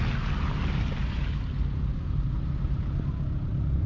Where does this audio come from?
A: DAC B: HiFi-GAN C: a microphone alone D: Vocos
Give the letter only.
C